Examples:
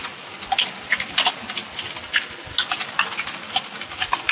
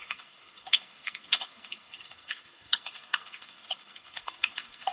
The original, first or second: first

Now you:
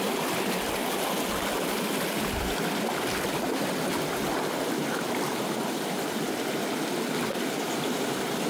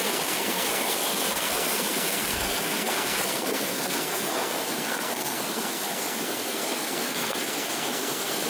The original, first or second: first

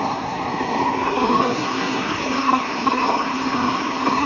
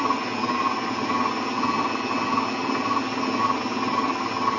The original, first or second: second